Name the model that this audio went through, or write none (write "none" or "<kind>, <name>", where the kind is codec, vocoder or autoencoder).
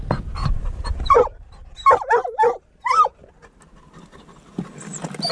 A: none